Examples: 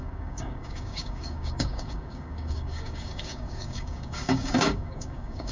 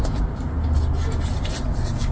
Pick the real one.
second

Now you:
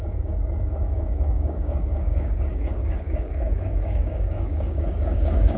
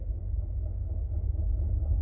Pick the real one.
second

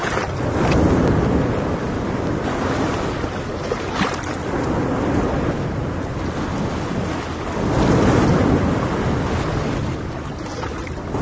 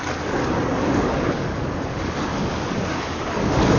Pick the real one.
first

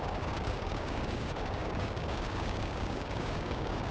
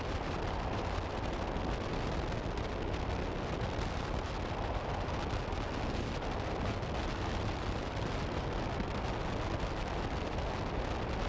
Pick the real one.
second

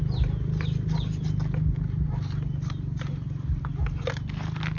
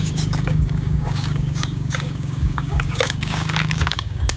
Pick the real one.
first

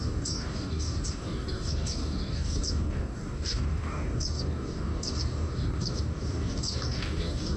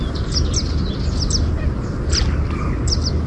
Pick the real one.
second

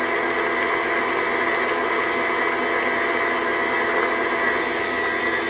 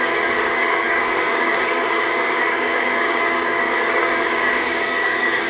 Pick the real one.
first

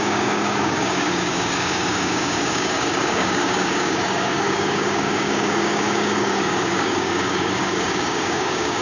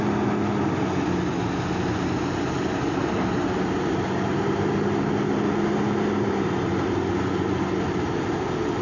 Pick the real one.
second